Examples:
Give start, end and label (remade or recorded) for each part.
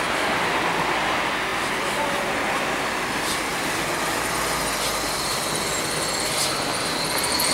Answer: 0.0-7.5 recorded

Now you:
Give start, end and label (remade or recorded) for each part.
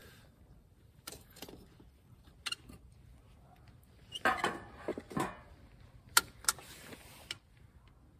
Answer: 0.0-2.3 remade; 2.3-8.2 recorded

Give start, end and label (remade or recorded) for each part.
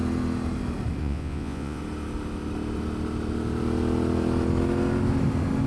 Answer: 0.0-1.0 recorded; 1.0-1.8 remade; 1.8-5.7 recorded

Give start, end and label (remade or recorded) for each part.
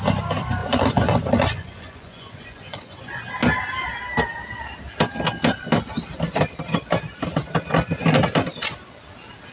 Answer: 0.0-0.6 recorded; 0.6-3.2 remade; 3.2-9.5 recorded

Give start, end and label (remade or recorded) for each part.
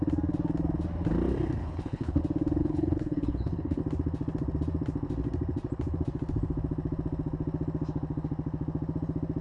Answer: 0.0-1.6 recorded; 1.6-2.2 remade; 2.2-2.6 recorded; 2.6-3.8 remade; 3.8-9.4 recorded